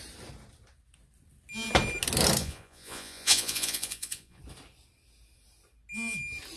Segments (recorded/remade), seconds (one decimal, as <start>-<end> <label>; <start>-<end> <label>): 0.0-2.4 recorded; 2.4-4.4 remade; 4.4-6.6 recorded